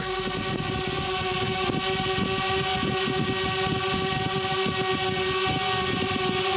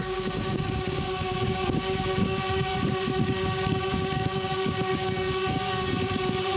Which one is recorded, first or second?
first